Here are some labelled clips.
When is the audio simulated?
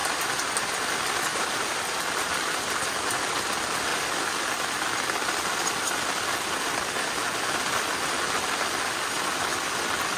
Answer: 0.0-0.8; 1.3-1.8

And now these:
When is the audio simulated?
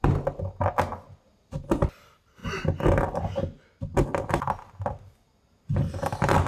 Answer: none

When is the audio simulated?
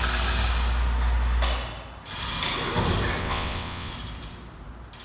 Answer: 3.2-3.9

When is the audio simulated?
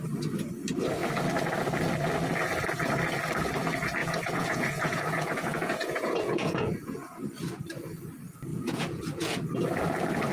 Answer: 4.0-7.2; 8.5-9.4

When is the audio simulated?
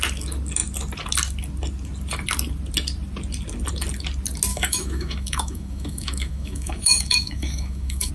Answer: 4.5-8.1